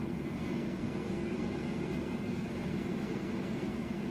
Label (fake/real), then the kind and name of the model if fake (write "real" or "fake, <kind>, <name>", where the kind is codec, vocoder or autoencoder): fake, codec, SNAC